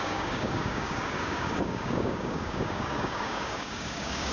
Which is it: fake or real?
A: fake